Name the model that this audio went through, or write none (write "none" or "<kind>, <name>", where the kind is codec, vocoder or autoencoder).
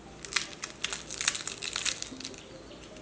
none